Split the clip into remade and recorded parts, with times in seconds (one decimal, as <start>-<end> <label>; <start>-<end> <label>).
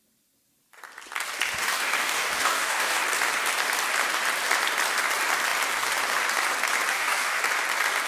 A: 0.0-1.6 recorded; 1.6-3.0 remade; 3.0-6.9 recorded; 6.9-7.4 remade; 7.4-8.1 recorded